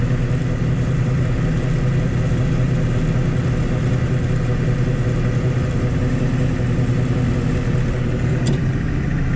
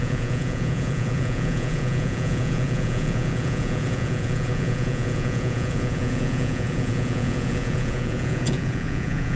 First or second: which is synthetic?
second